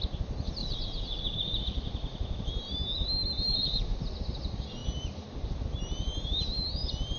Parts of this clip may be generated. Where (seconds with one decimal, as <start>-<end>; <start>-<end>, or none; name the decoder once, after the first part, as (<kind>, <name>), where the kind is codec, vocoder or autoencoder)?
0.6-1.6 (vocoder, Vocos); 3.5-4.1